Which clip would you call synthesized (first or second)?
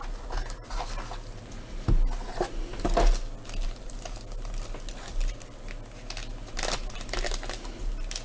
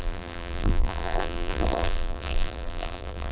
second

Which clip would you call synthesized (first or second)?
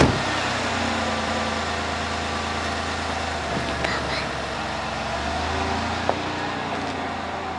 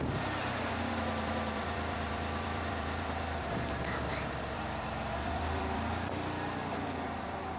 second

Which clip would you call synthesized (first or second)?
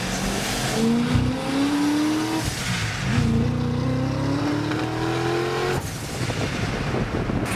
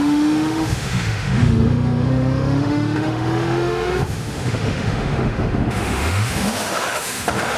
second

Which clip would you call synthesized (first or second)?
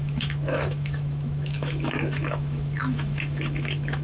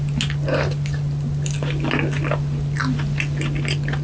first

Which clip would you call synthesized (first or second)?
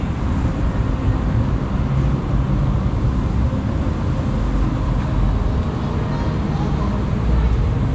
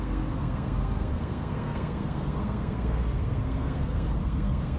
second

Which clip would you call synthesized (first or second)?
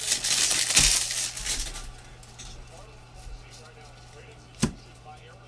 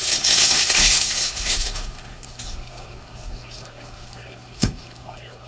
second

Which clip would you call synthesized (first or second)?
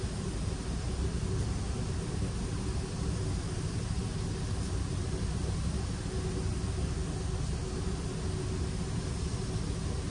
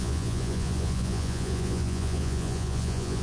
second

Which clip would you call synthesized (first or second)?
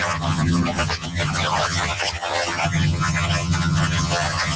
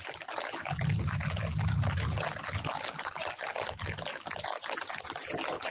first